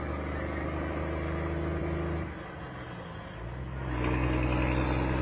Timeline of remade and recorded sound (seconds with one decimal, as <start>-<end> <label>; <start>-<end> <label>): 0.0-1.8 recorded; 1.8-2.6 remade; 2.6-5.2 recorded